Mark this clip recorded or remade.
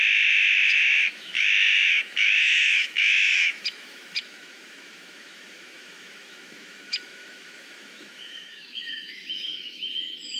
remade